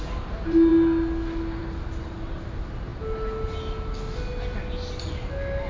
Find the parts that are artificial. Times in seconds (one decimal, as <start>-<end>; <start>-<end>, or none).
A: none